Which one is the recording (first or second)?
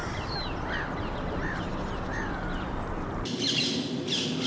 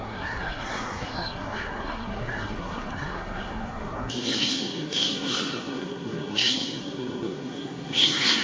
first